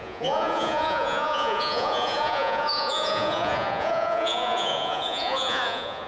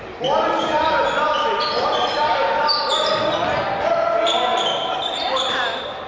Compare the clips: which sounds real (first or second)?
second